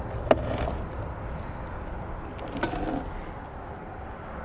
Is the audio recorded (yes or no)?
yes